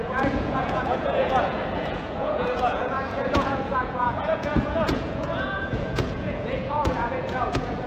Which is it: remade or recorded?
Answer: remade